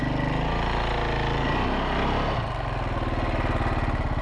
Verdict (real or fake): real